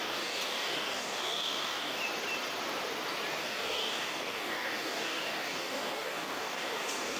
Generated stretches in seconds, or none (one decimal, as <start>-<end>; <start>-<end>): 0.0-2.0; 3.4-7.2